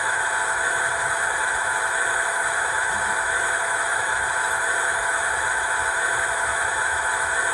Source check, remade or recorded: remade